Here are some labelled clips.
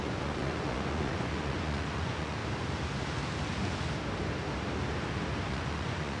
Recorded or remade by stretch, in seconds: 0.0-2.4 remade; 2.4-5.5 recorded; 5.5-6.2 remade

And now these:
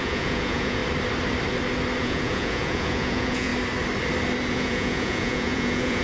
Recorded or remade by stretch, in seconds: 0.0-0.8 remade; 0.8-2.0 recorded; 2.0-3.5 remade; 3.5-4.5 recorded; 4.5-6.0 remade

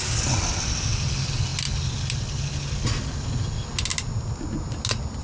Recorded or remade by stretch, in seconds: 0.0-5.2 recorded

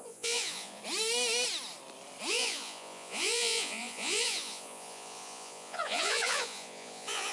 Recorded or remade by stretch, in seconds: 0.0-0.8 remade; 0.8-2.3 recorded; 2.3-7.3 remade

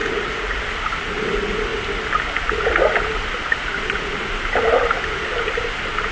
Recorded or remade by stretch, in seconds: 0.0-0.6 remade; 0.6-6.1 recorded

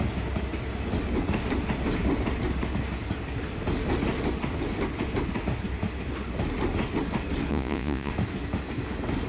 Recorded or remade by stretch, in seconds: 0.0-7.5 recorded; 7.5-8.1 remade; 8.1-9.3 recorded

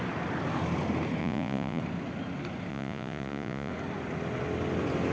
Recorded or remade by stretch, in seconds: 0.0-1.2 recorded; 1.2-1.8 remade; 1.8-2.7 recorded; 2.7-3.7 remade; 3.7-5.1 recorded

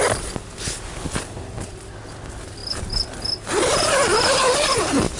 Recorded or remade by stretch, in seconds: 0.0-5.2 recorded